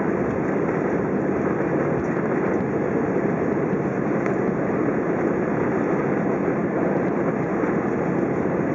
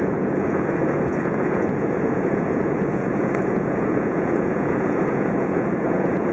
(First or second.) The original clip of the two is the first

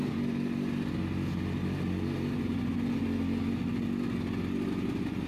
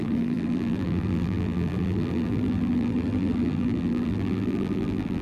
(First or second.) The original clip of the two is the first